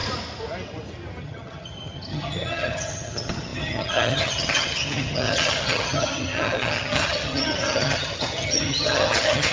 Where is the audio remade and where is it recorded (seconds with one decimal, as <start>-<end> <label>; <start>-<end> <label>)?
0.0-1.2 recorded; 1.2-9.5 remade